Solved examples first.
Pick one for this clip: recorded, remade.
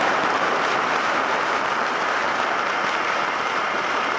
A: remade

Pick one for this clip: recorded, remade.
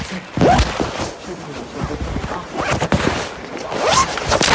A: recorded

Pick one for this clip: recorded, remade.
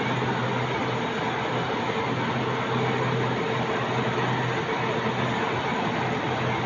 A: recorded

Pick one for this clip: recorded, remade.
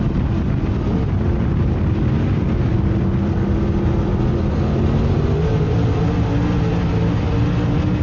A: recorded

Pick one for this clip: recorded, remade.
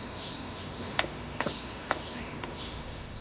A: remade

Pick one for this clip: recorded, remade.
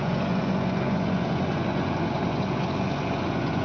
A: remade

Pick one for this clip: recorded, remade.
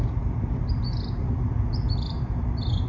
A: recorded